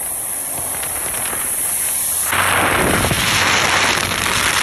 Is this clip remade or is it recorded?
recorded